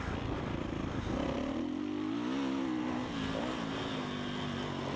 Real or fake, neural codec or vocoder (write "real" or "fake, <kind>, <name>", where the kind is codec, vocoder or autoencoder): real